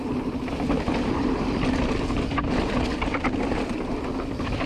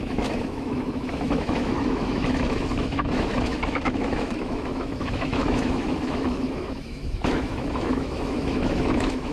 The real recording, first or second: first